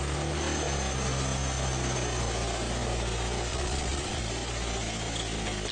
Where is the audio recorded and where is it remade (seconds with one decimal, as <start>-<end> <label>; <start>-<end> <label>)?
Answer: 0.0-3.5 recorded; 3.5-4.2 remade; 4.2-5.7 recorded